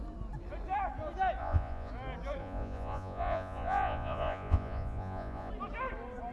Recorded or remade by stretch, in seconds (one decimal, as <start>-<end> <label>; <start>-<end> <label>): 0.0-1.4 recorded; 1.4-1.9 remade; 1.9-2.4 recorded; 2.4-5.5 remade; 5.5-6.3 recorded